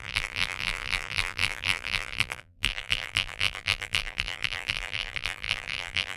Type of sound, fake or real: fake